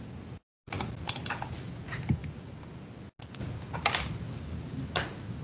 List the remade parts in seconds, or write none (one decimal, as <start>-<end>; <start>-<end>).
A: none